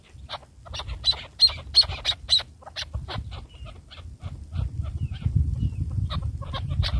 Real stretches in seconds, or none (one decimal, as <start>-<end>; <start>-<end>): 0.4-2.1